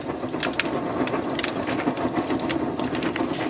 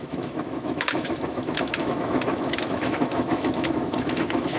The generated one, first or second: second